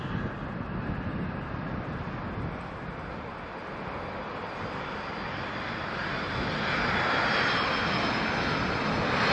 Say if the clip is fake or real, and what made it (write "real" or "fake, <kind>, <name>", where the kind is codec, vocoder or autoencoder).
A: real